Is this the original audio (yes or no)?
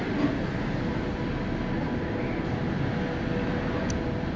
yes